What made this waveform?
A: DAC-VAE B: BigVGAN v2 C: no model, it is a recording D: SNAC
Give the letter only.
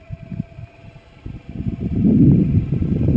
B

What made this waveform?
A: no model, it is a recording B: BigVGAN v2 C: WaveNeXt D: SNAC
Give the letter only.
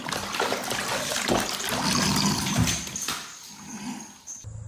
A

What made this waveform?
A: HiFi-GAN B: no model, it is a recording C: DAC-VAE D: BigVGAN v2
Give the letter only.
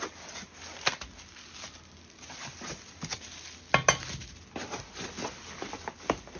B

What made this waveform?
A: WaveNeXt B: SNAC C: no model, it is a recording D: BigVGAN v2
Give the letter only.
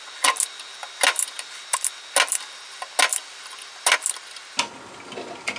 C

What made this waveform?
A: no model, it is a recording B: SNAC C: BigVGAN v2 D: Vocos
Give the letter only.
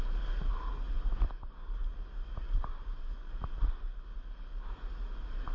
A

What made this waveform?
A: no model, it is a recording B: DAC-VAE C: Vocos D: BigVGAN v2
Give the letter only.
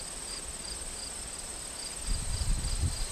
A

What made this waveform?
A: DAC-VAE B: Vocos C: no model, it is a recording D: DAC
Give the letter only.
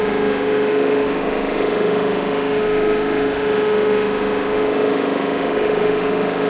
A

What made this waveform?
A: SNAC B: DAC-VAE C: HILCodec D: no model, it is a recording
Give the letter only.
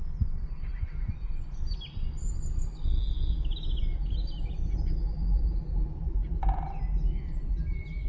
D